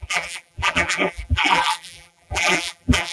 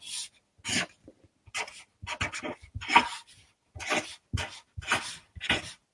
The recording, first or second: second